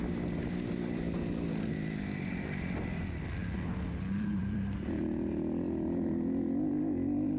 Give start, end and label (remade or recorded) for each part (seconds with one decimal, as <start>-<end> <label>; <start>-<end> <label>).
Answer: 0.0-7.4 recorded

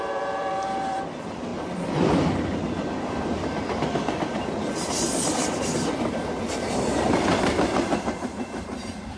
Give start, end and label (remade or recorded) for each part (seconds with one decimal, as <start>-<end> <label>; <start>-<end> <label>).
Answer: 0.0-1.5 remade; 1.5-4.9 recorded; 4.9-9.2 remade

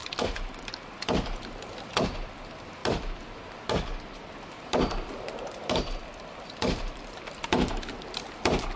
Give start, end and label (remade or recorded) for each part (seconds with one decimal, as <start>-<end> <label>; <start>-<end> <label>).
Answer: 0.0-1.9 remade; 1.9-2.8 recorded; 2.8-7.3 remade; 7.3-8.8 recorded

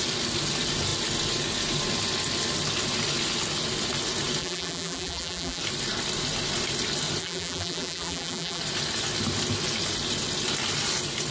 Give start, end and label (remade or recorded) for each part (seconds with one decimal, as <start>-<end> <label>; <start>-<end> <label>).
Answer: 0.0-4.4 recorded; 4.4-5.6 remade; 5.6-7.2 recorded; 7.2-8.6 remade; 8.6-11.3 recorded

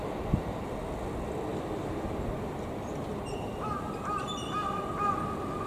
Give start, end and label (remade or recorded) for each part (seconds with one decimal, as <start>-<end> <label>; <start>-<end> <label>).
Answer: 0.0-1.5 recorded; 1.5-2.0 remade; 2.0-3.1 recorded; 3.1-4.9 remade; 4.9-5.7 recorded

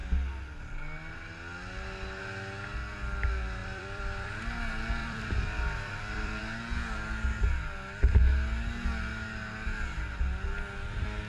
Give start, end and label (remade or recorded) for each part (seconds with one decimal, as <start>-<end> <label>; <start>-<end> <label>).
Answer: 0.0-3.6 recorded; 3.6-4.4 remade; 4.4-5.0 recorded; 5.0-6.4 remade; 6.4-11.3 recorded